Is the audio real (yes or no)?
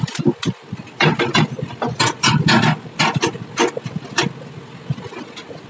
yes